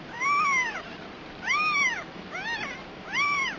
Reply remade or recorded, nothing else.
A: remade